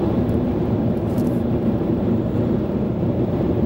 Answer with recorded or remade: remade